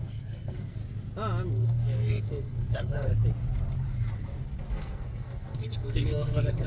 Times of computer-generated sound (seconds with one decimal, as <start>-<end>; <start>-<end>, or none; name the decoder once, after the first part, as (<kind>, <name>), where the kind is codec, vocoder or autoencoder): 0.0-0.8 (codec, SNAC); 1.5-3.1; 4.7-6.7